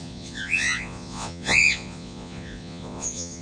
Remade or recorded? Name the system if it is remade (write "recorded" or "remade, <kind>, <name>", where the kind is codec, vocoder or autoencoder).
remade, vocoder, Vocos